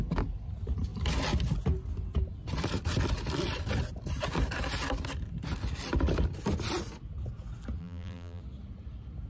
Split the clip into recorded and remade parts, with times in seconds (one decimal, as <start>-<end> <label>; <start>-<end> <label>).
0.0-7.8 recorded; 7.8-8.4 remade; 8.4-9.3 recorded